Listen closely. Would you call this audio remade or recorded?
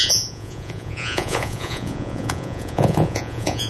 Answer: remade